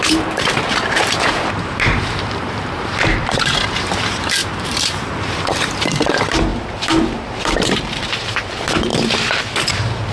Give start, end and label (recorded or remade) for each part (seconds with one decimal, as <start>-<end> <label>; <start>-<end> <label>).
0.0-8.9 remade; 8.9-10.1 recorded